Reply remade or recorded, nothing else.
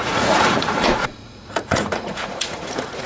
remade